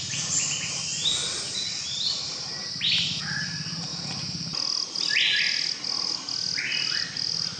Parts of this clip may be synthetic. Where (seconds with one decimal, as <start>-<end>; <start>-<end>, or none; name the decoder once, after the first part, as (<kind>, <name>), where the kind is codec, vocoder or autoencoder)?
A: none

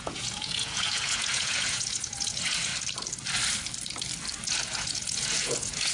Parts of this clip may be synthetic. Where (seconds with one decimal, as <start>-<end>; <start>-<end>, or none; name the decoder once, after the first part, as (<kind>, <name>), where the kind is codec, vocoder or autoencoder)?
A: 0.0-2.7 (vocoder, Vocos); 4.5-5.9